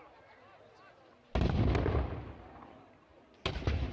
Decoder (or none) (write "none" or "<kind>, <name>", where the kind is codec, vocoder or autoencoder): none